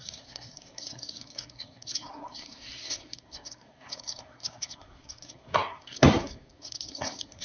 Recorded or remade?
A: remade